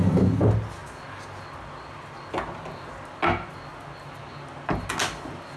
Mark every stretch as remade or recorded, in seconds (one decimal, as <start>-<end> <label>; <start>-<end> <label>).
0.0-5.6 recorded